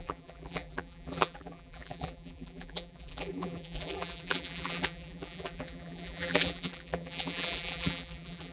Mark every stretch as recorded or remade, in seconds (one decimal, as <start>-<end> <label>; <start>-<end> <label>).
0.0-8.5 remade

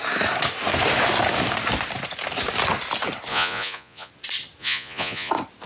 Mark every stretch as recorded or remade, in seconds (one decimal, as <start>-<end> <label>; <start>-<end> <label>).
0.0-3.3 recorded; 3.3-4.1 remade; 4.1-4.6 recorded; 4.6-5.3 remade; 5.3-5.7 recorded